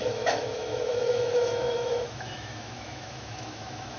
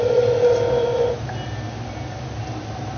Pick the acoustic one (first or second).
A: second